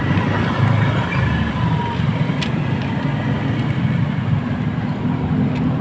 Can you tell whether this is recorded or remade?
recorded